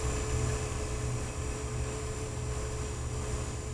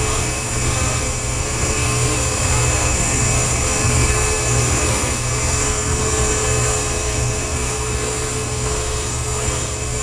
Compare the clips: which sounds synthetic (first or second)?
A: second